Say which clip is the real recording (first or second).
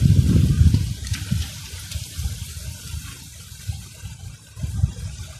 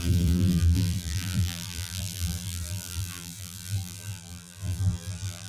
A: first